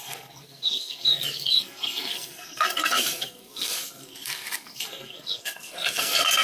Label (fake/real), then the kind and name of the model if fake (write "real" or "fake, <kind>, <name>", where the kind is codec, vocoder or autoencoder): fake, codec, SNAC